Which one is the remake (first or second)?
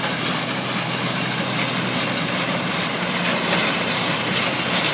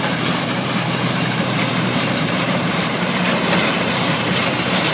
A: second